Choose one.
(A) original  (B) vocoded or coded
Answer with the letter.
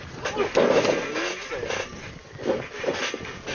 A